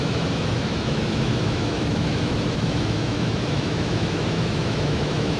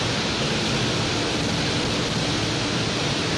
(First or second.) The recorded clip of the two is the second